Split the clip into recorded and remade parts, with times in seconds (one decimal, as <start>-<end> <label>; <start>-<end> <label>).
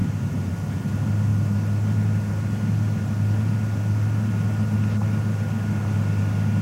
0.0-0.5 remade; 0.5-6.6 recorded